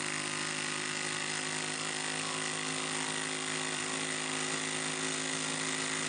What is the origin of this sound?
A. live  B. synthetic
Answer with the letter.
A